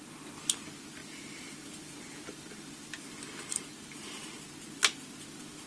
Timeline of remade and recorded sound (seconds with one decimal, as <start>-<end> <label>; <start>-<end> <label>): 0.0-1.0 recorded; 1.0-4.4 remade; 4.4-5.7 recorded